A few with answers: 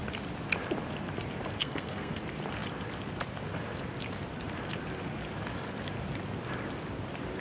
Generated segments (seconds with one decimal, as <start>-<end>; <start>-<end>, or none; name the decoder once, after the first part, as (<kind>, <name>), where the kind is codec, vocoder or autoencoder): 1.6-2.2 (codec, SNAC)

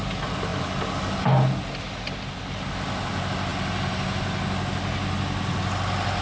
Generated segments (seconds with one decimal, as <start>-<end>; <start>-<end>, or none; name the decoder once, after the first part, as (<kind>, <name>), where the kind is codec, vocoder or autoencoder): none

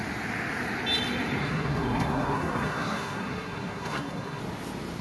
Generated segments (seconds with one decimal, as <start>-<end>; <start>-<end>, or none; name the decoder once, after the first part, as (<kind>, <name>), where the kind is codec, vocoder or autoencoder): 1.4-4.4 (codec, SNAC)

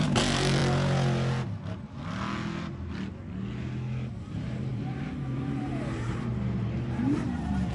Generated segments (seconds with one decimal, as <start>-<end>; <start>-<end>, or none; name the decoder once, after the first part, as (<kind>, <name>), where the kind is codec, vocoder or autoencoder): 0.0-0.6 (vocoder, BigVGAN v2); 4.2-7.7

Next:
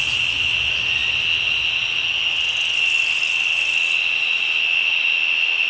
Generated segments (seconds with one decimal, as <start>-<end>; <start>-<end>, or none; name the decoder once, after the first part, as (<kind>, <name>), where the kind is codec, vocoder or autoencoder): none

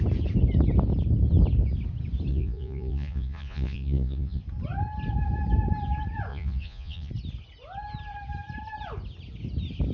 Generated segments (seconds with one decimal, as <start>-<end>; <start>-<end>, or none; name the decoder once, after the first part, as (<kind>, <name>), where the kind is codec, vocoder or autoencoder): 2.3-4.4 (vocoder, Vocos); 6.3-7.1

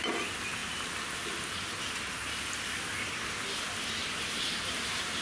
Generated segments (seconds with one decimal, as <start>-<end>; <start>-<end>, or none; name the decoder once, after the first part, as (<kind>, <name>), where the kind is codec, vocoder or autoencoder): 4.0-5.2 (vocoder, BigVGAN v2)

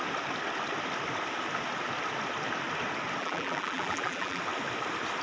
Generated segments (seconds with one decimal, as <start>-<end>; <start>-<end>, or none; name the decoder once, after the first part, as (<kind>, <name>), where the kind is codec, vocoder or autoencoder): 3.2-4.4 (vocoder, BigVGAN v2)